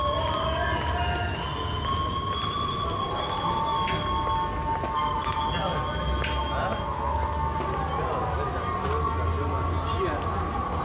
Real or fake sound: real